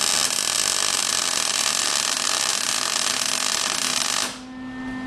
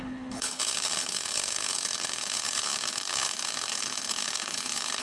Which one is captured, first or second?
first